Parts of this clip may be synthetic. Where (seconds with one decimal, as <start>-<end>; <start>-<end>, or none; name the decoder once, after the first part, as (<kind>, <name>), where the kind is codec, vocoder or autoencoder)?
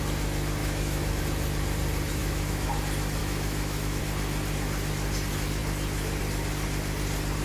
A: 0.6-1.2 (autoencoder, DAC-VAE); 2.2-2.7; 3.2-4.0